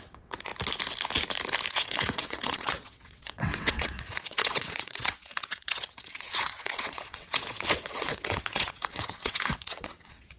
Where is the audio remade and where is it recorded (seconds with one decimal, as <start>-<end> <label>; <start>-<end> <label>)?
0.0-0.5 remade; 0.5-1.7 recorded; 1.7-10.4 remade

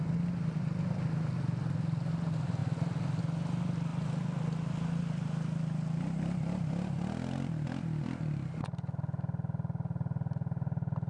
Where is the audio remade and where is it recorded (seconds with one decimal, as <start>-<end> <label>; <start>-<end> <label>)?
0.0-11.1 recorded

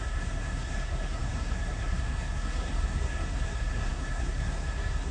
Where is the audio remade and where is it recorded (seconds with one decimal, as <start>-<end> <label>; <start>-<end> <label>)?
0.0-5.1 remade

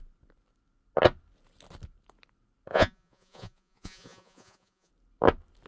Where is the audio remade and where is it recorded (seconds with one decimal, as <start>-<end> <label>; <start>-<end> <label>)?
0.0-2.7 recorded; 2.7-4.9 remade; 4.9-5.7 recorded

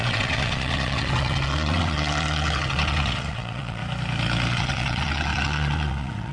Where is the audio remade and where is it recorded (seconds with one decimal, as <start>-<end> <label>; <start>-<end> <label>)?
0.0-3.8 remade; 3.8-4.5 recorded; 4.5-6.3 remade

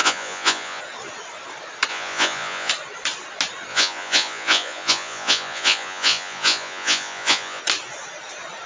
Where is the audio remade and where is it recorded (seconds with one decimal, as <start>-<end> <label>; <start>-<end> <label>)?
0.0-0.8 remade; 0.8-1.9 recorded; 1.9-2.7 remade; 2.7-3.7 recorded; 3.7-7.6 remade; 7.6-8.7 recorded

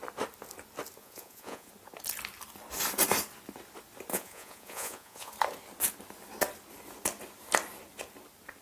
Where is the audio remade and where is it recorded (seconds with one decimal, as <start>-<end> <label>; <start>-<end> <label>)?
0.0-1.0 recorded; 1.0-1.7 remade; 1.7-4.1 recorded; 4.1-5.3 remade; 5.3-8.6 recorded

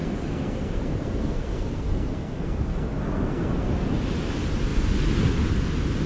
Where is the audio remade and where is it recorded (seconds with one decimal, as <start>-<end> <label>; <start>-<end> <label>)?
0.0-3.7 remade; 3.7-6.1 recorded